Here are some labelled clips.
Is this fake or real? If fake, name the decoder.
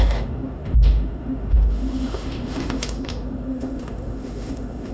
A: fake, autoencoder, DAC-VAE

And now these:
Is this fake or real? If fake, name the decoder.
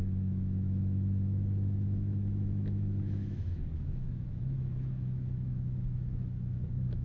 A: fake, autoencoder, DAC-VAE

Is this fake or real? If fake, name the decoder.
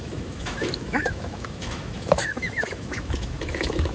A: fake, autoencoder, DAC-VAE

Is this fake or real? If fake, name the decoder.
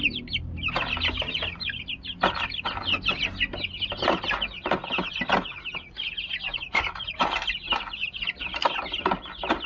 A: real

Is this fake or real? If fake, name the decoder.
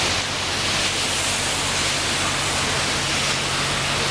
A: real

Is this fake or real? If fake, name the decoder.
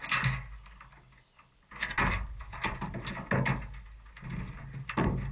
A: real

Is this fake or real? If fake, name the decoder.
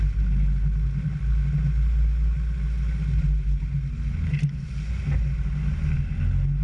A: real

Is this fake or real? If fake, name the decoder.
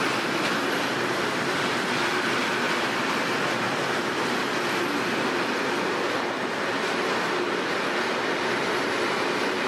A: real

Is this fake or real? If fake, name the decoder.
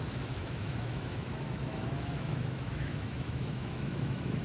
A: fake, autoencoder, DAC-VAE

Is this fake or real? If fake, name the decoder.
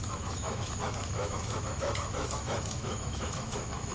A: fake, autoencoder, DAC-VAE